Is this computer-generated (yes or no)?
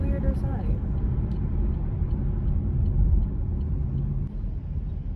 no